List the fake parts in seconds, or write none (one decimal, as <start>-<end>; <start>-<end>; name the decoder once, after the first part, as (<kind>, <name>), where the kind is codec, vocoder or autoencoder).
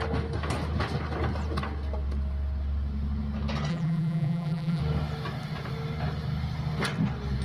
3.7-4.8 (vocoder, BigVGAN v2)